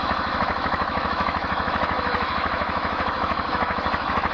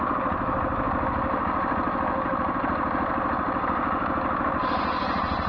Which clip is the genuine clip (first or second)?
second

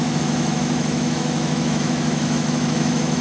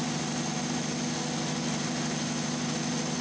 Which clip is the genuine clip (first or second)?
second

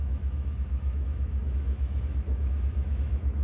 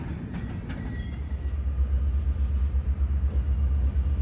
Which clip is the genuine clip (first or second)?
second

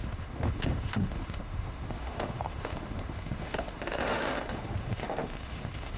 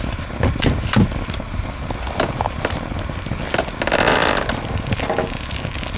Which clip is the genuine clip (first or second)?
second